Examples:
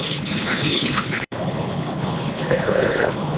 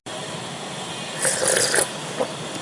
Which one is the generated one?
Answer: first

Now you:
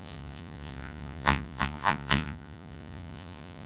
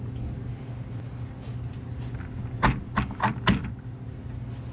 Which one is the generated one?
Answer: first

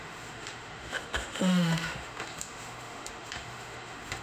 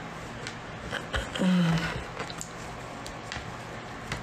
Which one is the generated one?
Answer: first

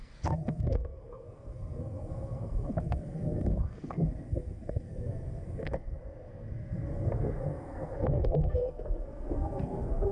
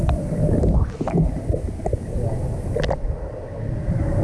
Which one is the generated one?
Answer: first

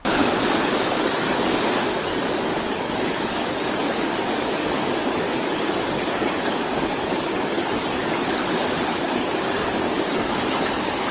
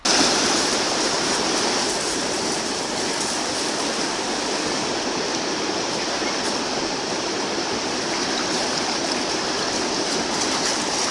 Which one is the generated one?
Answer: first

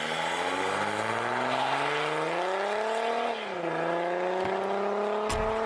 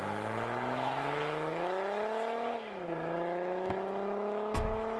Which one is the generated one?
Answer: second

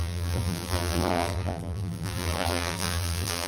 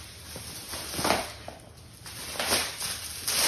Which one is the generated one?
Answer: first